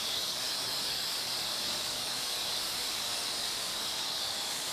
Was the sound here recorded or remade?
remade